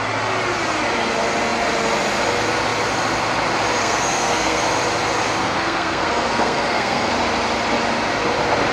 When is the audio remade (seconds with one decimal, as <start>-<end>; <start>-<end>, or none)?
3.8-4.6; 5.4-7.1